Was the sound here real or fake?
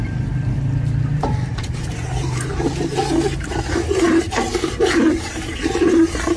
fake